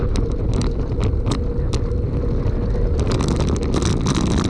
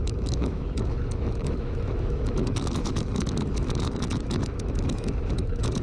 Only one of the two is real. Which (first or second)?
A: first